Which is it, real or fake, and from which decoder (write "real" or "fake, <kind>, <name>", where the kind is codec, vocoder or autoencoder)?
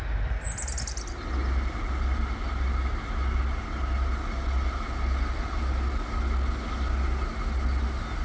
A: real